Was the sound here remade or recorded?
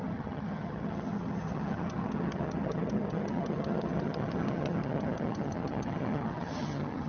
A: remade